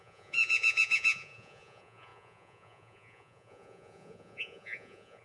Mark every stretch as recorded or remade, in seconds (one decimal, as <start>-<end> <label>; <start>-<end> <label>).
0.0-5.2 remade